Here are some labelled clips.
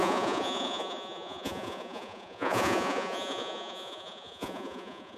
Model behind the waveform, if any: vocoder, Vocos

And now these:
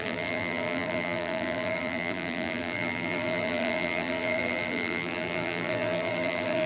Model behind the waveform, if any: vocoder, BigVGAN v2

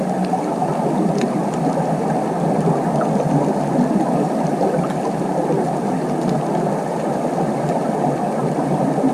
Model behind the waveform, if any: none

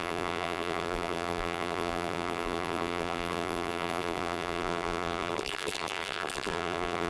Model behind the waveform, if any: vocoder, BigVGAN v2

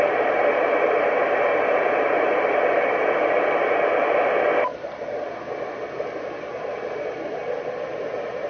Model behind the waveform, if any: none